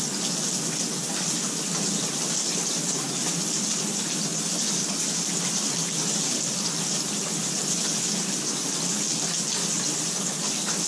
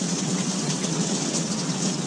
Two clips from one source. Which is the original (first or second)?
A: first